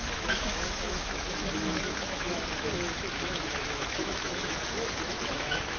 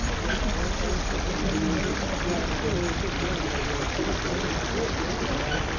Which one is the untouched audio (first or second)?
second